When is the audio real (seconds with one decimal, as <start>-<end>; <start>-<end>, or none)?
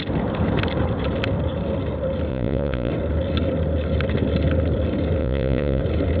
0.0-2.3; 2.9-5.2; 5.8-6.2